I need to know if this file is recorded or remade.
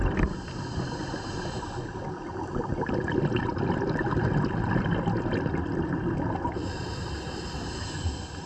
recorded